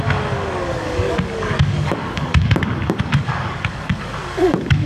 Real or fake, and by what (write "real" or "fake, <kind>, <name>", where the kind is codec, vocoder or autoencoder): fake, codec, DAC